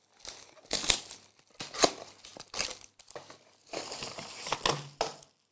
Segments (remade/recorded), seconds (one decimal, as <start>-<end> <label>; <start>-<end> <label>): 0.0-5.5 recorded